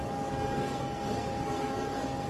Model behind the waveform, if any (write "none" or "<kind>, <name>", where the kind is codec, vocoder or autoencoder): codec, SNAC